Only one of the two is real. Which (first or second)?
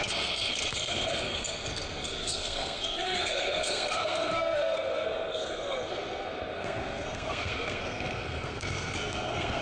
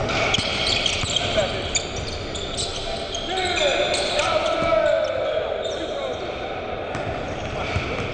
second